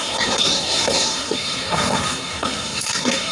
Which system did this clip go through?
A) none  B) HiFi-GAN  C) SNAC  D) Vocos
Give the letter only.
C